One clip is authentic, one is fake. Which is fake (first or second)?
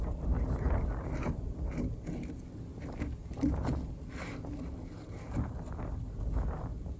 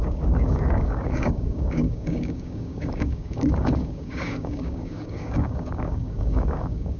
second